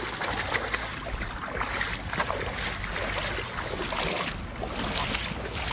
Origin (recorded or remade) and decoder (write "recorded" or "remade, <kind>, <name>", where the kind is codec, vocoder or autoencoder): recorded